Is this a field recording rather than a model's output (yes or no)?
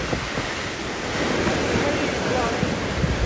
yes